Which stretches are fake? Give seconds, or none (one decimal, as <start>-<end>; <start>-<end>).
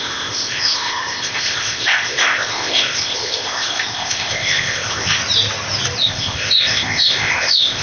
0.0-5.2; 6.0-7.8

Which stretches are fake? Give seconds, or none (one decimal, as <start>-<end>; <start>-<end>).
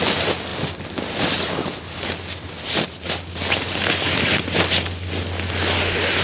none